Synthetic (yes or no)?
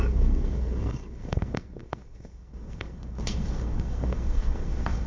yes